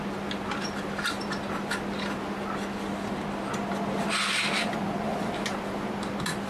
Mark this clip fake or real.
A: real